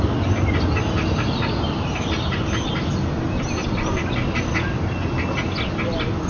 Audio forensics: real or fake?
real